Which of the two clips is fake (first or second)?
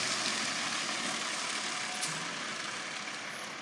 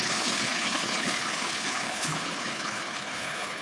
second